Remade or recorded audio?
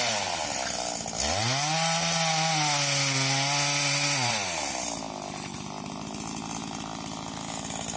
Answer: recorded